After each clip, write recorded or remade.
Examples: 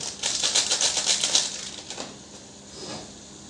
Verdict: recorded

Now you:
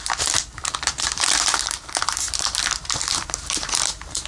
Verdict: remade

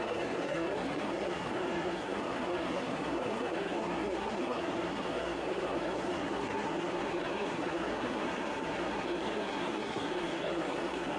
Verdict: remade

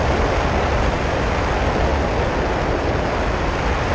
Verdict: recorded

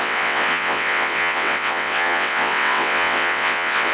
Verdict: remade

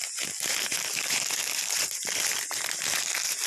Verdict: recorded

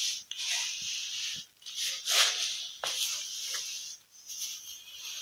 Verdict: recorded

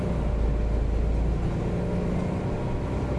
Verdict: recorded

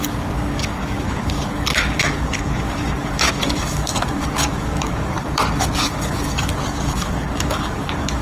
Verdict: remade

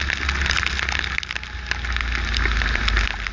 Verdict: recorded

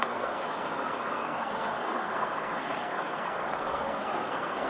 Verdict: remade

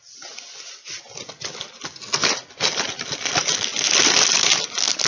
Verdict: recorded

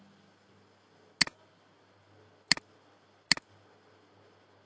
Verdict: recorded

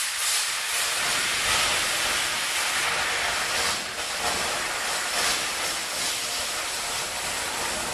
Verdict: recorded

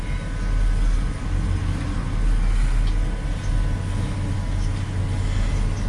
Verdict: recorded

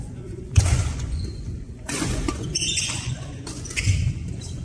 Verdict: remade